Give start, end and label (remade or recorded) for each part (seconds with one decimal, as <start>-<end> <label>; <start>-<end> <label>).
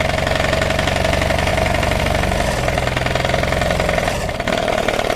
0.0-1.5 recorded; 1.5-2.0 remade; 2.0-4.0 recorded; 4.0-4.7 remade; 4.7-5.2 recorded